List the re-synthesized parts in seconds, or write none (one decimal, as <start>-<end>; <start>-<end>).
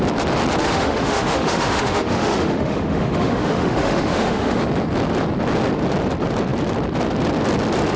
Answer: 0.6-4.6